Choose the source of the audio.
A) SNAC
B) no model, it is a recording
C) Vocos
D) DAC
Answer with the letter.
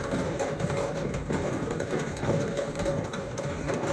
D